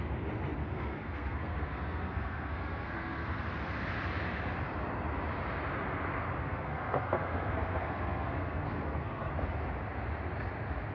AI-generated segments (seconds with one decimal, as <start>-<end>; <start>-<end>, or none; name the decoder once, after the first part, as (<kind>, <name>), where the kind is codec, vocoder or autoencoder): 0.6-3.4 (codec, SNAC); 6.4-9.3